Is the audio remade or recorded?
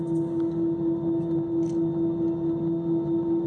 recorded